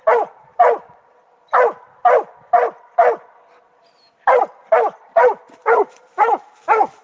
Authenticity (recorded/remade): recorded